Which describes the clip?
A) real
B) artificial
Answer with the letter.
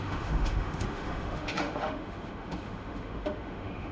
B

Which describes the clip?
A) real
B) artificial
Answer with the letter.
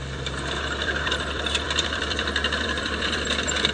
B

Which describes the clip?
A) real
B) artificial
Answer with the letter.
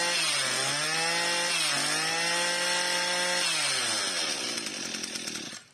A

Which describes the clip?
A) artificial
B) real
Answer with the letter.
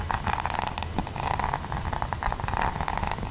B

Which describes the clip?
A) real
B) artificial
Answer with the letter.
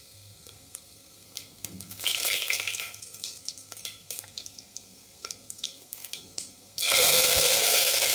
B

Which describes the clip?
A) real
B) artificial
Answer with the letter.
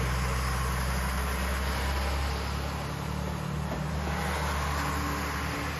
A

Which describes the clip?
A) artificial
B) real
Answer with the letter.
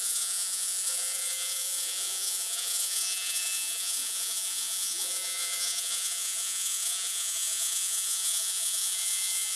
A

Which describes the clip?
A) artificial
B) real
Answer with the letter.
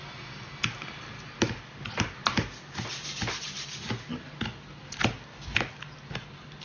B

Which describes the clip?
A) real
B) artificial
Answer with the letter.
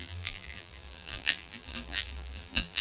B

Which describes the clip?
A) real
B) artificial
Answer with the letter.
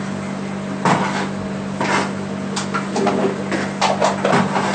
A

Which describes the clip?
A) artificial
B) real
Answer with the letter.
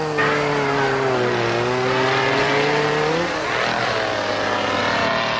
B